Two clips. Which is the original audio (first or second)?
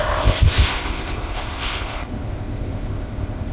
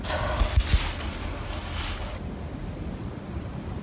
second